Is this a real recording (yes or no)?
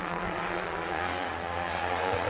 no